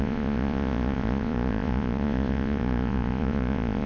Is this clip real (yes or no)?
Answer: no